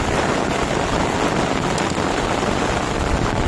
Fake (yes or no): no